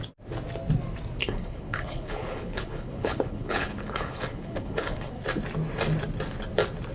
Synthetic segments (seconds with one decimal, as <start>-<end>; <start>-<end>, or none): 1.2-5.1